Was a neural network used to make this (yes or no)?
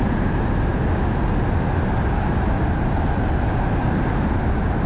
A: no